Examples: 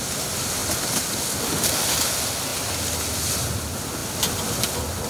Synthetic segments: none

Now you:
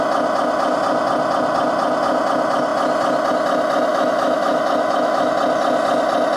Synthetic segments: 3.9-5.3 (autoencoder, DAC-VAE)

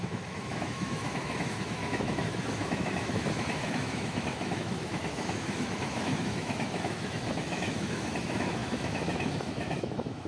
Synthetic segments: 0.0-10.3 (autoencoder, DAC-VAE)

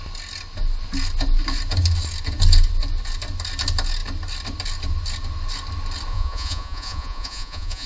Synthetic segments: 6.1-7.9 (vocoder, Vocos)

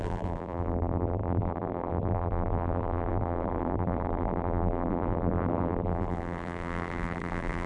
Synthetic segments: 0.0-7.7 (vocoder, BigVGAN v2)

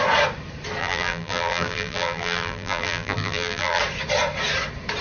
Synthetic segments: 0.8-3.8 (vocoder, BigVGAN v2)